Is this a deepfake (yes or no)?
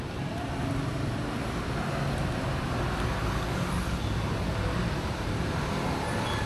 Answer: no